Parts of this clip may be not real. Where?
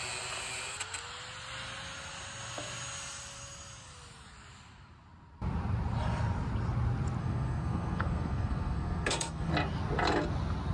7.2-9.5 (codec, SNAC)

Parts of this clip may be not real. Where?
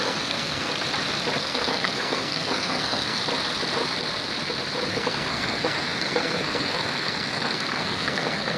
0.0-0.7 (codec, SNAC); 1.4-3.2; 4.9-8.6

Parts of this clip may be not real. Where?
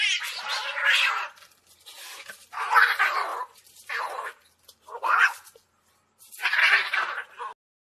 none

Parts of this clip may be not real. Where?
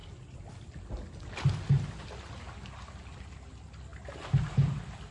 none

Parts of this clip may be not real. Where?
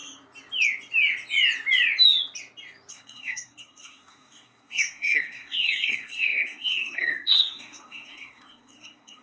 2.9-9.2 (codec, SNAC)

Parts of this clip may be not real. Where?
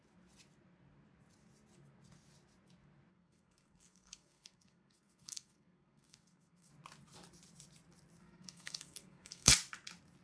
3.1-6.7 (codec, SNAC); 8.2-9.5